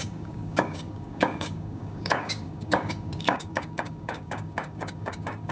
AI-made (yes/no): yes